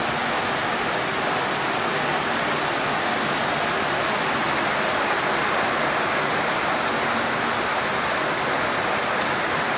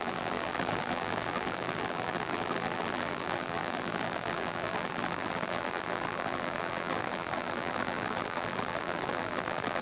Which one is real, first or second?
first